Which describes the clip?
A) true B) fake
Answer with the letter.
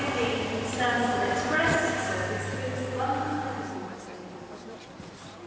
A